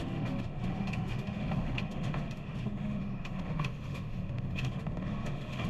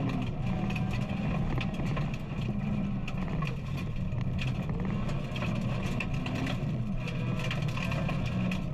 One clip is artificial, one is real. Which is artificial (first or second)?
first